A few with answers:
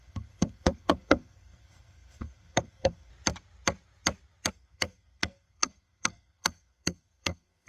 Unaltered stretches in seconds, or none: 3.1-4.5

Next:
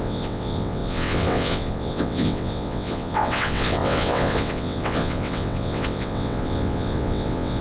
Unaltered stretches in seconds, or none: none

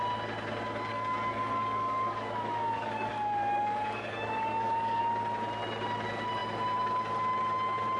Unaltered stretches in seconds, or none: 0.0-0.9; 5.0-8.0

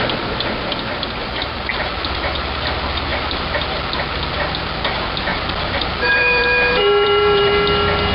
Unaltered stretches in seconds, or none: 0.0-1.2; 2.0-5.3; 7.5-8.1

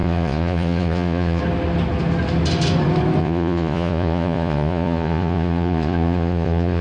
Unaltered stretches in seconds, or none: 1.4-3.2

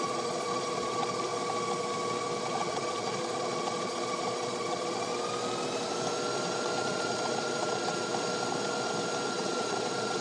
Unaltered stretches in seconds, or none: 1.3-2.4; 5.1-6.8; 8.1-9.3

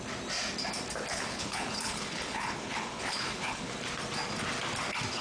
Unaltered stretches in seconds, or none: 0.0-1.1; 3.7-5.2